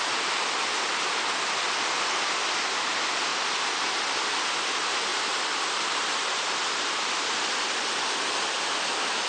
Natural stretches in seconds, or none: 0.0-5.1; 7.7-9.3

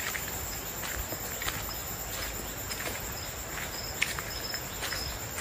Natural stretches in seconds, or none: 0.0-5.4